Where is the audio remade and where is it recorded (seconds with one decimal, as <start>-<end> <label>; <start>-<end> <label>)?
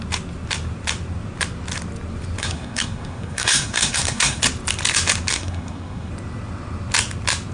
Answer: 0.0-2.4 recorded; 2.4-4.4 remade; 4.4-5.3 recorded; 5.3-6.1 remade; 6.1-7.5 recorded